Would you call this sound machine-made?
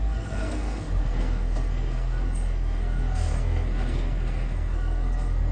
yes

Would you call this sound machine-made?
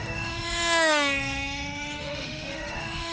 yes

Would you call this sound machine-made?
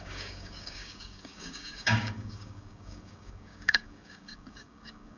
yes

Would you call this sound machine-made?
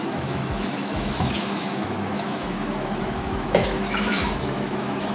yes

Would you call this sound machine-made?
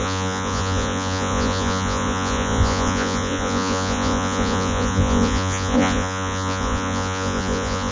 yes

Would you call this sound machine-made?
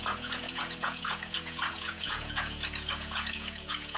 yes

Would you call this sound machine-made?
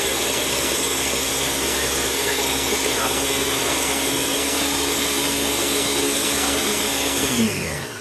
yes